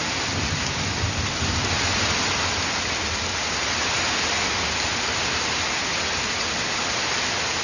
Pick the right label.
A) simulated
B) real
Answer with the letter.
B